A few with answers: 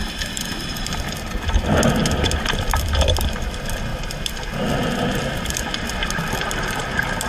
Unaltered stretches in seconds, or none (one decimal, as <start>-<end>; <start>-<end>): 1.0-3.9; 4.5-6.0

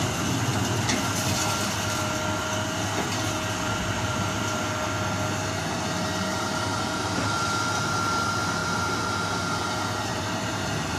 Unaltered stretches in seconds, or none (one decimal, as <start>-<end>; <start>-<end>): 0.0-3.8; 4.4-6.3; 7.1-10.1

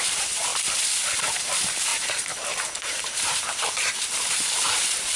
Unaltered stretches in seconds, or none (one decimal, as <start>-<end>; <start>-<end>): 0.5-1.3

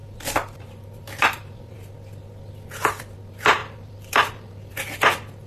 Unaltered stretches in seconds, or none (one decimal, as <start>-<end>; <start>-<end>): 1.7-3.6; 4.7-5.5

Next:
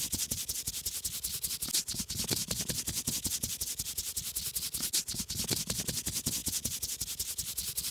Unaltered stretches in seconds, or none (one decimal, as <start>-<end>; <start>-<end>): 0.0-7.9

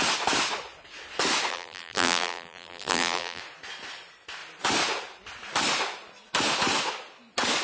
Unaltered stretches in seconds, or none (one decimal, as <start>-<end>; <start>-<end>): 0.0-1.5; 3.4-7.6

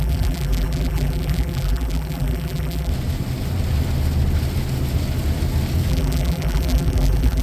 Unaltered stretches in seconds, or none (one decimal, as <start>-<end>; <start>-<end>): 2.9-5.9